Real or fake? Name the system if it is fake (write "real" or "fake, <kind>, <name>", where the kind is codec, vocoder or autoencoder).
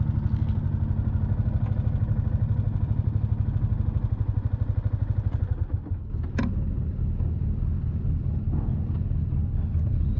real